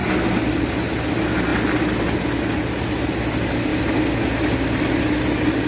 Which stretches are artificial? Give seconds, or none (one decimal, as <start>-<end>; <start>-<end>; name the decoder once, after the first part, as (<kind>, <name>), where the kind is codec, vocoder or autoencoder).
none